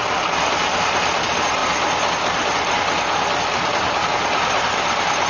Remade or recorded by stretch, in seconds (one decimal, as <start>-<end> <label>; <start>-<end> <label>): 0.0-5.3 recorded